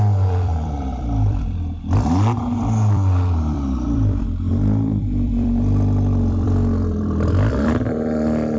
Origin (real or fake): fake